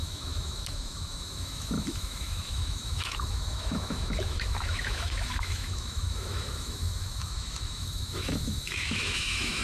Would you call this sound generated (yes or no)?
yes